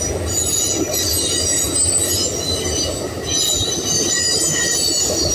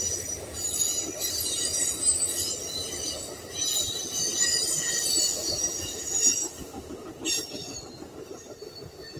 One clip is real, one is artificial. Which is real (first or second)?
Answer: first